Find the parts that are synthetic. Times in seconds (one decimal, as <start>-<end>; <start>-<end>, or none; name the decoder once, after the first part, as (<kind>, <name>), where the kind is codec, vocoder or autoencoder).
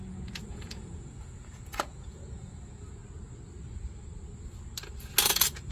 0.0-3.0 (vocoder, Vocos); 5.2-5.7